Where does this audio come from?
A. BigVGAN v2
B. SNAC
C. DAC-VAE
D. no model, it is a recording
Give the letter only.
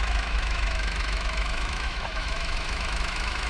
C